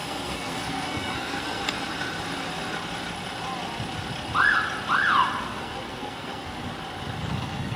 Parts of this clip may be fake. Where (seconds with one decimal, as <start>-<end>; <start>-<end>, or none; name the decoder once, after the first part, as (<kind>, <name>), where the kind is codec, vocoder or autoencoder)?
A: 0.0-1.6 (codec, SNAC); 5.4-6.7; 7.3-7.8